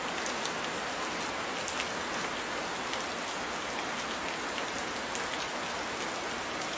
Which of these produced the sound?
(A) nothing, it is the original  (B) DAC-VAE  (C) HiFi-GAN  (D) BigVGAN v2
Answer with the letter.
A